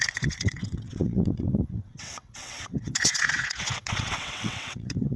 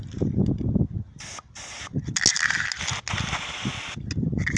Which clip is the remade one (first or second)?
first